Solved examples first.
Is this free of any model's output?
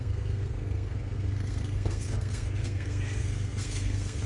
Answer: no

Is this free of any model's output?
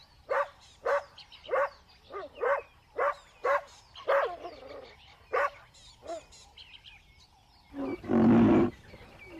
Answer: yes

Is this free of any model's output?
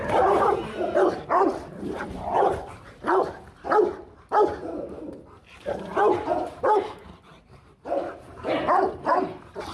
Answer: no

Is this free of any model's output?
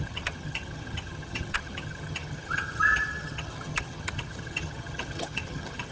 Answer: no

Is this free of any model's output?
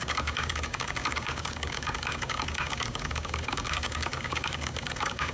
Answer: no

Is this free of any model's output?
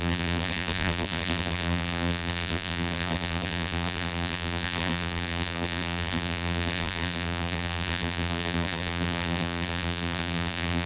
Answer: no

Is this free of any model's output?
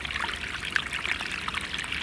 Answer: yes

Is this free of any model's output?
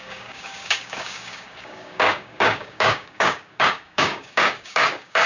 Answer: no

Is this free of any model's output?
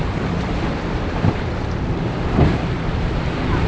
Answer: no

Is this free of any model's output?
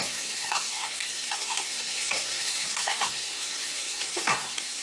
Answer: no